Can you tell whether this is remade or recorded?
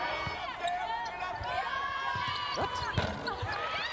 recorded